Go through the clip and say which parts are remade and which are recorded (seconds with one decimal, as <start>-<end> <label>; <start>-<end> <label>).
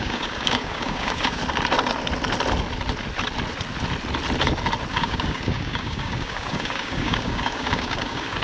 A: 0.0-1.4 remade; 1.4-4.9 recorded; 4.9-8.4 remade